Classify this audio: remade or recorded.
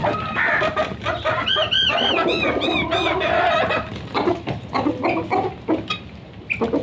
recorded